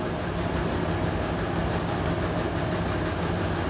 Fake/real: real